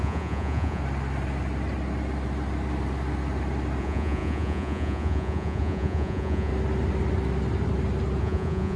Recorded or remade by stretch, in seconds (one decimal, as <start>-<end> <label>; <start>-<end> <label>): 0.0-0.8 remade; 0.8-3.8 recorded; 3.8-6.5 remade; 6.5-8.2 recorded; 8.2-8.8 remade